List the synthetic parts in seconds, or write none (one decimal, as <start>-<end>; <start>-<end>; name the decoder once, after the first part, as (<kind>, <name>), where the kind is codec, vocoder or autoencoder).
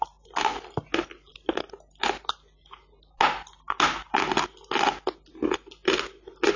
none